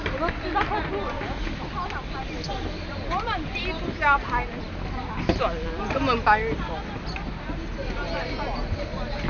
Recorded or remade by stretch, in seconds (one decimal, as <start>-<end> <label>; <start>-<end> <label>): 0.0-9.3 recorded